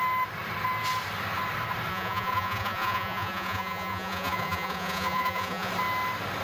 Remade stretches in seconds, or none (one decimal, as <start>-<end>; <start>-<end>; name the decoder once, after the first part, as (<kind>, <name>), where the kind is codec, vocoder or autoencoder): 1.9-5.7 (vocoder, Vocos)